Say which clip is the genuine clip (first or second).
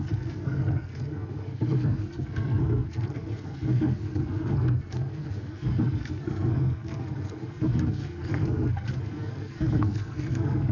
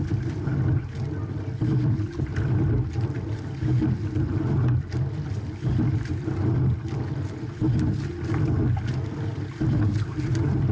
second